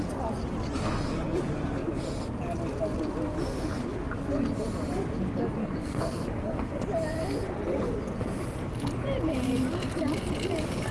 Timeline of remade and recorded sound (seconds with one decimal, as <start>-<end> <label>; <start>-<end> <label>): 0.0-5.6 recorded; 5.6-6.8 remade; 6.8-10.9 recorded